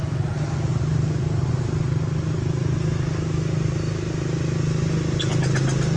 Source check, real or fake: real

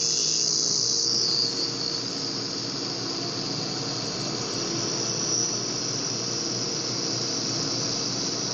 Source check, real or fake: real